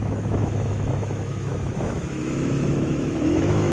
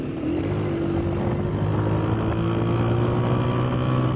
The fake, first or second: first